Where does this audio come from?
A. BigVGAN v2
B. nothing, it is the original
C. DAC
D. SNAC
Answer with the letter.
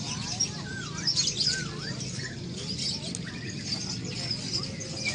B